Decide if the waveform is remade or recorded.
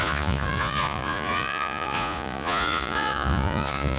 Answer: remade